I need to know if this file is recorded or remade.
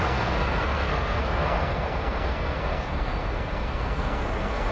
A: remade